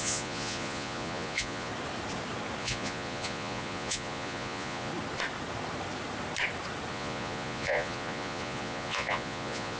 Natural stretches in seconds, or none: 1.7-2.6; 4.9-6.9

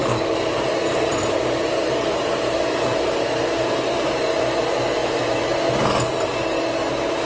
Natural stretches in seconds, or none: 4.4-5.0; 5.6-7.3

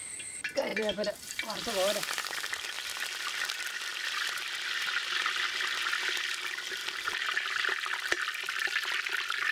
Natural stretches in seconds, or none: 0.0-0.7; 4.6-6.8; 8.1-9.5

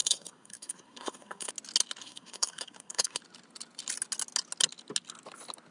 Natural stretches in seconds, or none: 1.5-2.0; 3.2-5.7

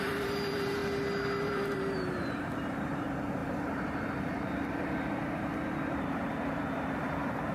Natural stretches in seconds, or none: 0.8-1.4

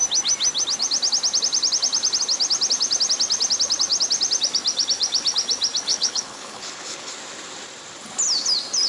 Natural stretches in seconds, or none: 0.0-5.9; 7.1-8.9

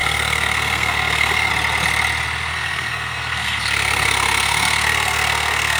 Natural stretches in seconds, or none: 1.5-2.5

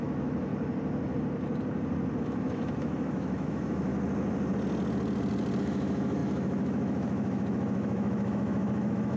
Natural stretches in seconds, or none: 0.5-2.2; 3.9-5.6